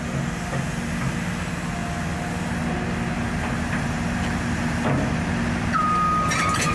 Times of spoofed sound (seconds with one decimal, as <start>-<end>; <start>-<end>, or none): none